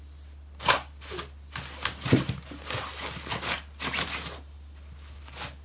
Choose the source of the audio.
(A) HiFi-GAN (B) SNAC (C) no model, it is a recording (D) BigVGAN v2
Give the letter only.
C